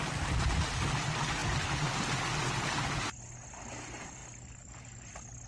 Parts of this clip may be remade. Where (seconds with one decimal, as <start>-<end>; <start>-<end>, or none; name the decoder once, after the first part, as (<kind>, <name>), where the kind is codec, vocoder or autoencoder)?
none